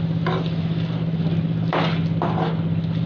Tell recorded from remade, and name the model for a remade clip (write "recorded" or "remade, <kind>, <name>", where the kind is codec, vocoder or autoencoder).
recorded